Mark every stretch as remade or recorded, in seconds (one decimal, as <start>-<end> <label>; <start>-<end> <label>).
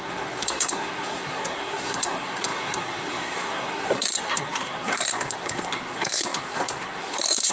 0.0-7.5 remade